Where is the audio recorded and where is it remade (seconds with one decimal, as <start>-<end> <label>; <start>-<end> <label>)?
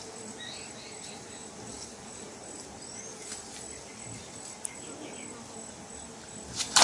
0.0-6.8 recorded